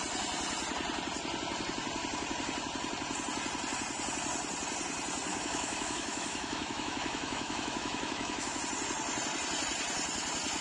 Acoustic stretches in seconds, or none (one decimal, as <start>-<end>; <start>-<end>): 0.0-5.3; 8.6-10.6